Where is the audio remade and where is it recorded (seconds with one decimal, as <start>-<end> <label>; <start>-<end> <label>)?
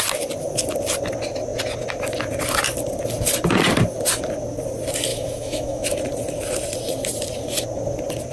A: 0.0-5.1 recorded; 5.1-5.9 remade; 5.9-8.3 recorded